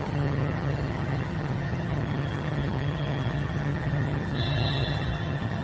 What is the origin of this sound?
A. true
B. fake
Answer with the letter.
B